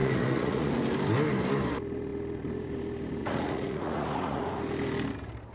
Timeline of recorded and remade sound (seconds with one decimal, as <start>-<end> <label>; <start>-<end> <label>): 0.0-0.7 remade; 0.7-3.2 recorded; 3.2-4.6 remade; 4.6-5.5 recorded